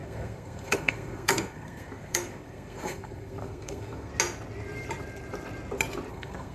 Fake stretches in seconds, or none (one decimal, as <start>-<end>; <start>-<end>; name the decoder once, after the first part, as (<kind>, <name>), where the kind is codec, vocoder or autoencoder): 0.0-4.1 (codec, SNAC); 6.1-6.5